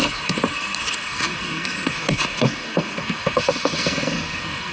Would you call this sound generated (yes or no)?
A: yes